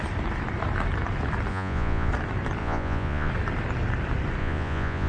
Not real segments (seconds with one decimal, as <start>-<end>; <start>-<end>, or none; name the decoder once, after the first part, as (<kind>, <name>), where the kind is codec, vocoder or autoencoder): 1.5-2.1 (vocoder, Vocos); 2.6-3.3; 4.4-5.1